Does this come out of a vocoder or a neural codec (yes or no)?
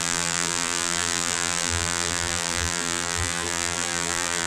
yes